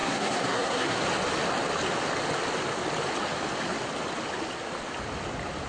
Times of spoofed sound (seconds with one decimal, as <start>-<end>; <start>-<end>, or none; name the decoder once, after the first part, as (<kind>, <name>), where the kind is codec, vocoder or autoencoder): 0.0-1.0 (codec, SNAC)